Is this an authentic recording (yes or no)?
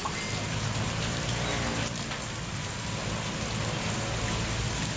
yes